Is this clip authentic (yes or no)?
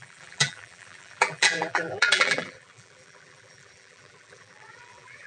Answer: no